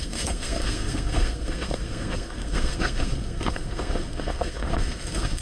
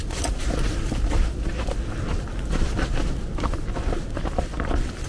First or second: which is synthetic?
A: first